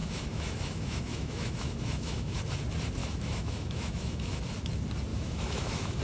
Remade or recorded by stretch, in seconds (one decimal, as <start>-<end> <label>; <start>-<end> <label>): 0.0-2.4 remade; 2.4-3.0 recorded; 3.0-4.4 remade; 4.4-5.1 recorded; 5.1-6.0 remade